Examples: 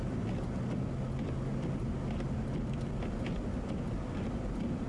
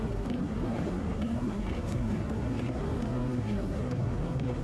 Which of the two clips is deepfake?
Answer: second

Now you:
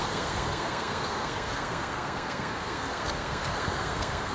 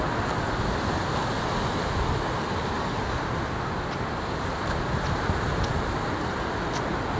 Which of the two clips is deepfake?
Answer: first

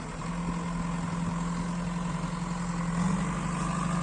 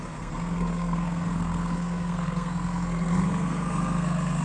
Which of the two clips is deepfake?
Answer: second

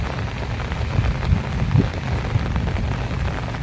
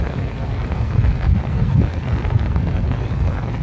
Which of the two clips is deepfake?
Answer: second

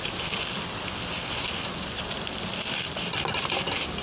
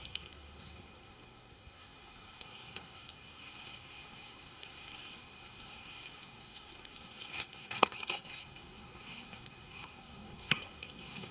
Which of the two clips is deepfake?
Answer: second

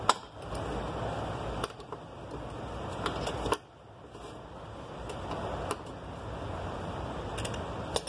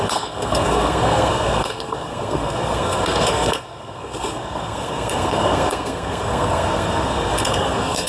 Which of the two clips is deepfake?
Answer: second